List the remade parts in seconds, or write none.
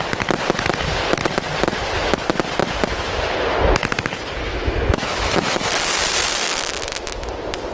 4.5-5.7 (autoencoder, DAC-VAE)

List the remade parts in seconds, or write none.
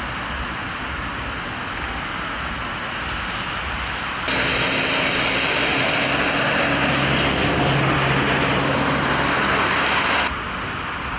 none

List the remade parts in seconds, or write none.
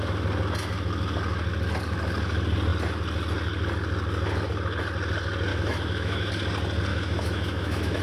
5.5-6.3 (autoencoder, DAC-VAE); 6.9-8.0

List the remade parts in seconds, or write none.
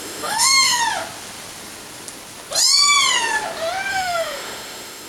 0.0-0.8 (autoencoder, DAC-VAE); 3.9-5.1